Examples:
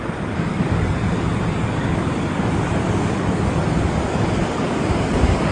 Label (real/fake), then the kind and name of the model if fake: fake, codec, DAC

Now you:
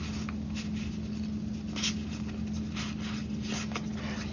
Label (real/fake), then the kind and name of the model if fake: real